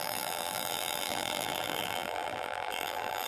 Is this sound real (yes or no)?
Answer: no